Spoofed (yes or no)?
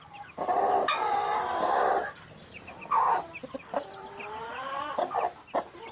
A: no